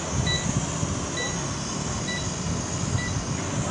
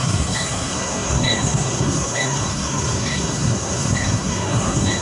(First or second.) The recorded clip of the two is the first